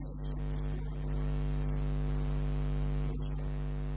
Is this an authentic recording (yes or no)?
yes